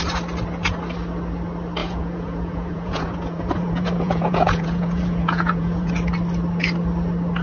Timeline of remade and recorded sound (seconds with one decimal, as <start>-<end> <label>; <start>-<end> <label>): 0.0-1.8 recorded; 1.8-5.9 remade; 5.9-7.4 recorded